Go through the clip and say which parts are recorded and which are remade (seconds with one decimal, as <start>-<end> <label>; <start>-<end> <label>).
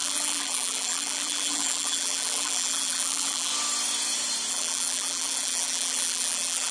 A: 0.0-3.5 remade; 3.5-4.5 recorded; 4.5-6.7 remade